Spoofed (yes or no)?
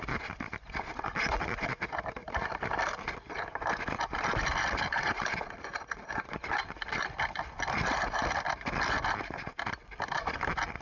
yes